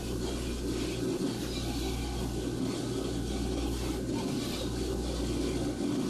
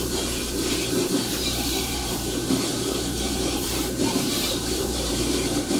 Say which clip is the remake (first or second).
second